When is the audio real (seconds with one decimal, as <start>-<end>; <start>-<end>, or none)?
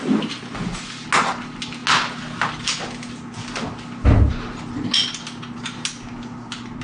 0.0-6.8